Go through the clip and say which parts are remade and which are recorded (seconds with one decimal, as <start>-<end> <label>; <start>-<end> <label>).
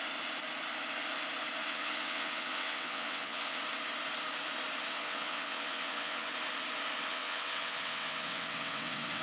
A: 0.0-1.6 recorded; 1.6-3.6 remade; 3.6-4.9 recorded; 4.9-6.3 remade; 6.3-7.1 recorded; 7.1-9.2 remade